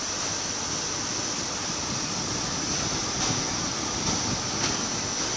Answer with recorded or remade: recorded